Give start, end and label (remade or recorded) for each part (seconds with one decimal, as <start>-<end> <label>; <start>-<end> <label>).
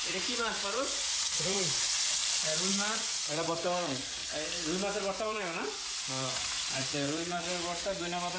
0.0-2.2 remade; 2.2-2.7 recorded; 2.7-4.2 remade; 4.2-5.2 recorded; 5.2-8.4 remade